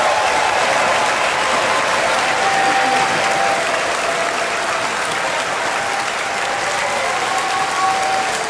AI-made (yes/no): no